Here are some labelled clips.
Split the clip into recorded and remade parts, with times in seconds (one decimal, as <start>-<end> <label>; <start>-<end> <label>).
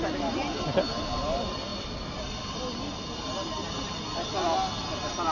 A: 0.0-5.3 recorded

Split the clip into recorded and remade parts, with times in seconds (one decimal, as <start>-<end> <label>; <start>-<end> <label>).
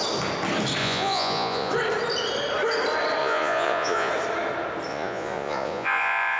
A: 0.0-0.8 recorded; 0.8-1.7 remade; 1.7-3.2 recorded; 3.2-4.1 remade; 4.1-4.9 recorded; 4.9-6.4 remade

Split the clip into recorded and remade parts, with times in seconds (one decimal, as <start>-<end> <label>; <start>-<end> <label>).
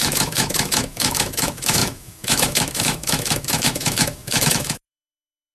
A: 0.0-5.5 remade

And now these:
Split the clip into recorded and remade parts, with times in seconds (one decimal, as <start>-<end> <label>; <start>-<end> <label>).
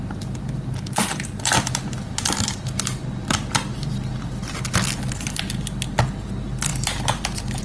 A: 0.0-7.6 recorded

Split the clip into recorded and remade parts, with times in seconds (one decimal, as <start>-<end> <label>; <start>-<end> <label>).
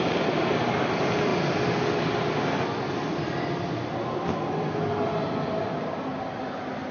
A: 0.0-6.9 recorded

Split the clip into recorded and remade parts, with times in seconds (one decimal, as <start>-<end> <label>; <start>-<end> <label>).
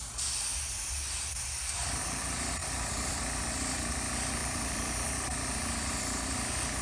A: 0.0-0.5 recorded; 0.5-2.0 remade; 2.0-2.6 recorded; 2.6-3.2 remade; 3.2-4.4 recorded; 4.4-4.9 remade; 4.9-6.8 recorded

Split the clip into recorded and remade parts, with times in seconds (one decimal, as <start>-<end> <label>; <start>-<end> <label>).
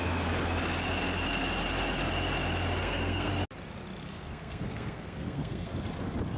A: 0.0-2.8 recorded; 2.8-3.3 remade; 3.3-4.1 recorded; 4.1-5.7 remade; 5.7-6.4 recorded